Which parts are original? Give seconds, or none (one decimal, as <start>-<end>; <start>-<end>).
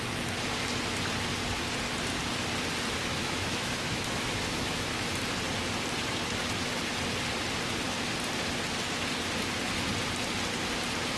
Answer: 0.0-3.1; 5.1-11.2